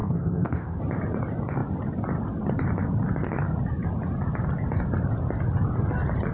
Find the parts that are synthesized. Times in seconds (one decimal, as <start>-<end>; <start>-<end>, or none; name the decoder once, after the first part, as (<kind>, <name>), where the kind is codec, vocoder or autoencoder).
0.0-0.8 (codec, ZipCodec)